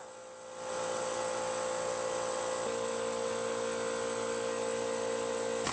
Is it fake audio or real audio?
real